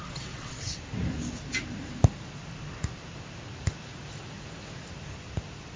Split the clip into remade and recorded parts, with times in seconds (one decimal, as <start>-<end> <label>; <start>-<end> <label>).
0.0-0.8 remade; 0.8-5.8 recorded